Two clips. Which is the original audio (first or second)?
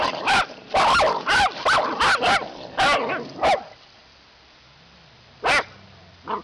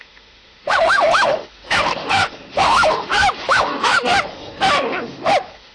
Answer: first